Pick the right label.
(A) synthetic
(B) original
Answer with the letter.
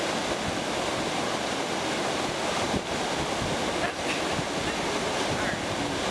B